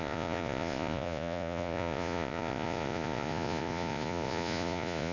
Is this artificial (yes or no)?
yes